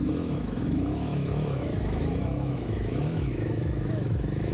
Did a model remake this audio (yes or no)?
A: yes